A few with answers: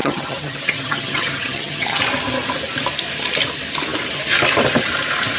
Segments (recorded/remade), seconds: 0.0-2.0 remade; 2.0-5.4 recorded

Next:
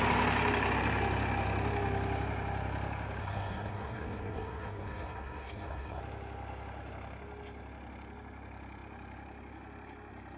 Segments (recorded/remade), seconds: 0.0-3.2 recorded; 3.2-6.0 remade; 6.0-10.4 recorded